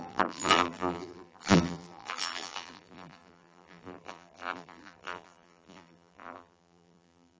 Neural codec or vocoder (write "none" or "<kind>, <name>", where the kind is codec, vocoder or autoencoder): vocoder, BigVGAN v2